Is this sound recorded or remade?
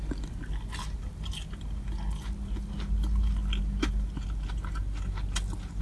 recorded